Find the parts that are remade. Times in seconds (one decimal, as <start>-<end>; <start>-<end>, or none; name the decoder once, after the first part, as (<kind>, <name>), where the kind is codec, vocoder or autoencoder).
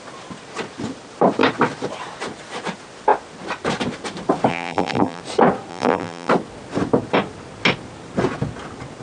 4.5-5.2 (vocoder, BigVGAN v2); 5.7-6.3